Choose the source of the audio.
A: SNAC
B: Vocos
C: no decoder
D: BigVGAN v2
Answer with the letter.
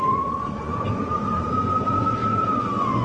B